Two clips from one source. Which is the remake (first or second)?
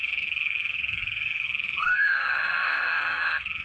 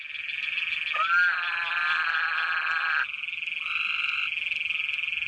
first